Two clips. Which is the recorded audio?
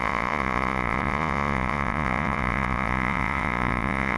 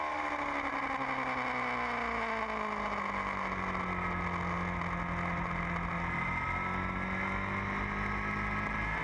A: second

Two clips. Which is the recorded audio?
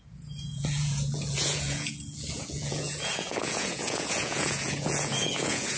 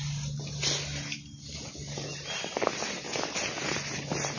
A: second